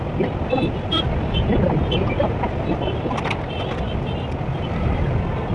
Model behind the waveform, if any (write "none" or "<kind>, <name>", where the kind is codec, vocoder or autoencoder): none